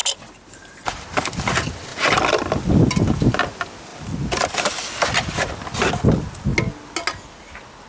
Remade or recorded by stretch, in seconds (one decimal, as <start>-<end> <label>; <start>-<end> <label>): 0.0-7.9 recorded